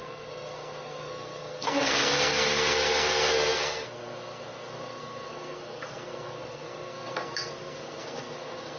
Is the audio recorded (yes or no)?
no